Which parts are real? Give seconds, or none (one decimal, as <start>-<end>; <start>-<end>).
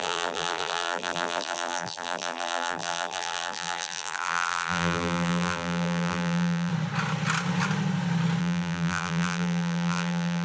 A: 6.7-8.4